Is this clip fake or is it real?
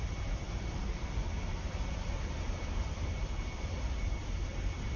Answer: real